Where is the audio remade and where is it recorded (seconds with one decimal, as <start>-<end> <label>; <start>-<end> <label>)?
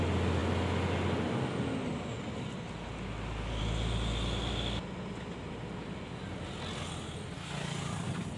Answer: 0.0-8.4 recorded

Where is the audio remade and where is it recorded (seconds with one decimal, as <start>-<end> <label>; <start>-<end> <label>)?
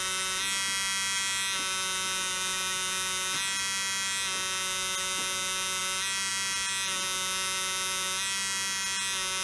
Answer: 0.0-9.4 recorded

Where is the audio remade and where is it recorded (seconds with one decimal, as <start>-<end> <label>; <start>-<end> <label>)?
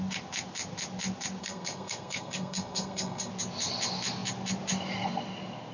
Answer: 0.0-1.4 recorded; 1.4-3.3 remade; 3.3-5.7 recorded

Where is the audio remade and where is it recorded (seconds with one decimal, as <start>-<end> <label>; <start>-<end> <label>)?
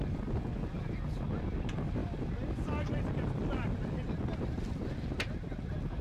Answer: 0.0-6.0 recorded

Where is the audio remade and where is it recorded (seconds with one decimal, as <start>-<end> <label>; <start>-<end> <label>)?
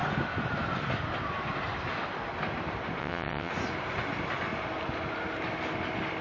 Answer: 0.0-3.0 recorded; 3.0-3.5 remade; 3.5-6.2 recorded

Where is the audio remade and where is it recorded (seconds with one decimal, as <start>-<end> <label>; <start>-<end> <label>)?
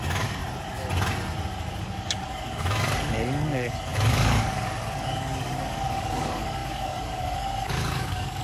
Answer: 0.0-0.4 remade; 0.4-1.8 recorded; 1.8-8.4 remade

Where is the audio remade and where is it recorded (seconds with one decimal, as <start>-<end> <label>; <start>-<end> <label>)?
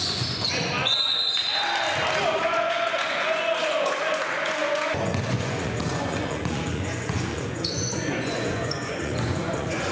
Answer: 0.0-1.5 remade; 1.5-2.3 recorded; 2.3-9.9 remade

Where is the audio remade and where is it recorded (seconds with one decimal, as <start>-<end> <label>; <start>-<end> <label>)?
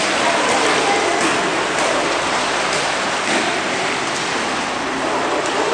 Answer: 0.0-5.7 recorded